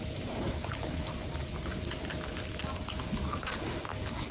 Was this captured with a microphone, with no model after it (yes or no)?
yes